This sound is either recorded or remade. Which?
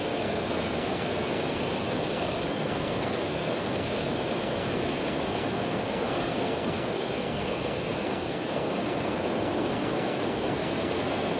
remade